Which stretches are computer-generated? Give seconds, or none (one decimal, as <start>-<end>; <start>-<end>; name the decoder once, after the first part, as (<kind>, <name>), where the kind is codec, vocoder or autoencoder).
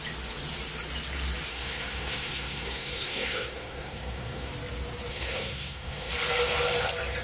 1.5-4.5 (codec, SNAC); 5.1-6.1